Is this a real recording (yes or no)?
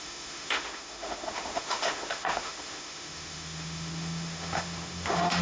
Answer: no